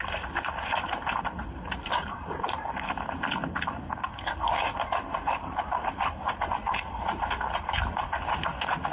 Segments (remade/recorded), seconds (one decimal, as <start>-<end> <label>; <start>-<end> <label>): 0.0-5.1 recorded; 5.1-6.2 remade; 6.2-8.9 recorded